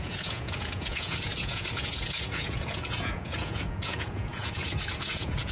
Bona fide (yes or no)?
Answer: no